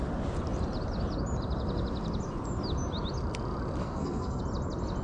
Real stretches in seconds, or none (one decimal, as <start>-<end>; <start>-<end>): 0.0-3.8; 4.4-5.0